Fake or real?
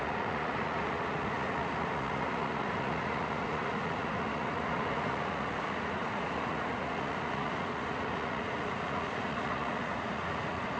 fake